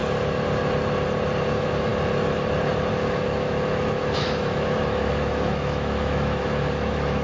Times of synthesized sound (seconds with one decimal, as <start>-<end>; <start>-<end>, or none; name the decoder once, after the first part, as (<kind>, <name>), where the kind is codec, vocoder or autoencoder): 1.5-1.9 (autoencoder, DAC-VAE); 2.9-7.2